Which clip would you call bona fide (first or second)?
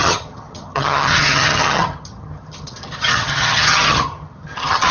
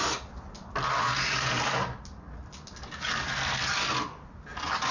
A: second